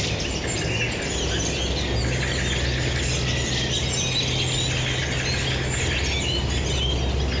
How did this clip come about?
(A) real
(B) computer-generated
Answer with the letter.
A